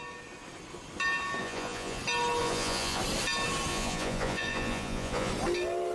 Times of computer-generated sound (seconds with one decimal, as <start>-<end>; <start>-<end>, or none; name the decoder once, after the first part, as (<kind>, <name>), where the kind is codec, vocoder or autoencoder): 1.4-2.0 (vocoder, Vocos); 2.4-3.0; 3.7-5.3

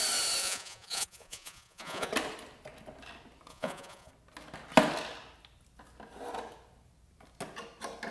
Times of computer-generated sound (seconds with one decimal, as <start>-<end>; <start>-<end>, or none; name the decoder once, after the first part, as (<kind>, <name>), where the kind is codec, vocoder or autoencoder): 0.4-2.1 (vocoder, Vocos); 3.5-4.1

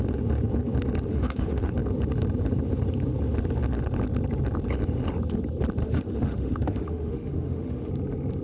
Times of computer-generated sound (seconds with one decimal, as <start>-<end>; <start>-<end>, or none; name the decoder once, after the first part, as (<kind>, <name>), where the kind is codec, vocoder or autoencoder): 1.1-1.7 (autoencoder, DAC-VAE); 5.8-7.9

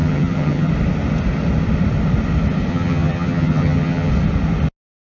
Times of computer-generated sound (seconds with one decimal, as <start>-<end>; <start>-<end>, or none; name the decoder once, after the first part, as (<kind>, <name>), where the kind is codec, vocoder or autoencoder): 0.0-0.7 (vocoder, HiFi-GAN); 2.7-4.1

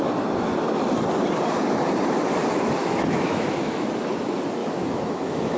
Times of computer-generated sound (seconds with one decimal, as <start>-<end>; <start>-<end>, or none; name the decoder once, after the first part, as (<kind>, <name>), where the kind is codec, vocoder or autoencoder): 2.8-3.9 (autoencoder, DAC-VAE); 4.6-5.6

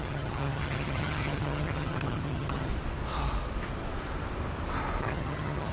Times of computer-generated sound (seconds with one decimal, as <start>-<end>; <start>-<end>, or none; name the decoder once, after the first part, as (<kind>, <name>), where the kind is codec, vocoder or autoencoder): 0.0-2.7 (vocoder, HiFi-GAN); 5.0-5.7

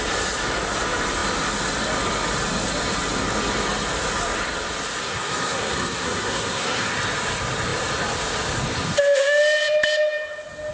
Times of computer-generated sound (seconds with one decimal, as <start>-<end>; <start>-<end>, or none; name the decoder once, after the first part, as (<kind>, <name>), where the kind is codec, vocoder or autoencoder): 5.0-6.9 (codec, SNAC)

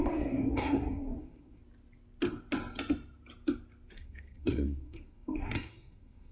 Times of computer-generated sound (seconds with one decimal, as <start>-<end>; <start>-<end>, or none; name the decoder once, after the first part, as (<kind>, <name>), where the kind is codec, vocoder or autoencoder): 0.0-1.6 (codec, SNAC); 3.9-6.3